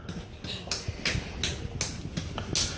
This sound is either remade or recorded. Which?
recorded